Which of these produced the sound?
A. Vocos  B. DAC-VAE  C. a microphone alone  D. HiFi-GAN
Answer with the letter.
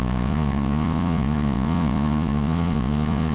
A